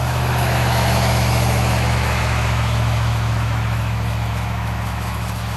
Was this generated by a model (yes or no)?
yes